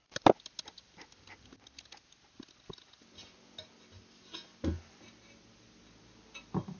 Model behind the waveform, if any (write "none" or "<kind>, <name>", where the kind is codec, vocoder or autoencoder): none